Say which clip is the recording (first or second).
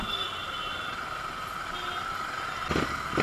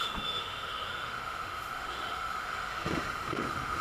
first